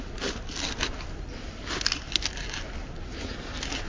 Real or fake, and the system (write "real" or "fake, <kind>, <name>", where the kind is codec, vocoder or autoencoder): real